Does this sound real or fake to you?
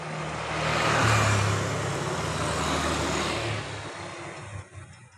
real